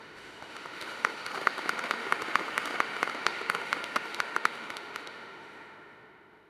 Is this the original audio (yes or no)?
no